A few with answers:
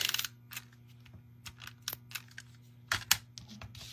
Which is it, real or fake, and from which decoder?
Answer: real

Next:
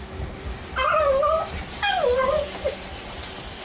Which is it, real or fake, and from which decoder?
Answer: real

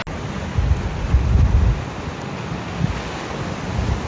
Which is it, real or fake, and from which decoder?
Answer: real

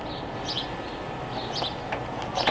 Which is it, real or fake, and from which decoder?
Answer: real